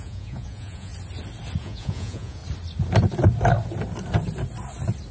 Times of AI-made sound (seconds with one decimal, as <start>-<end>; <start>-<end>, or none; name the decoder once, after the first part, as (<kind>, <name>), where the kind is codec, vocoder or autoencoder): 0.0-0.9 (vocoder, Vocos); 1.6-2.4